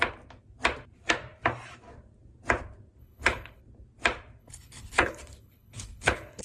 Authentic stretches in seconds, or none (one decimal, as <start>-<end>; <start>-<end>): 0.0-3.0; 3.6-4.4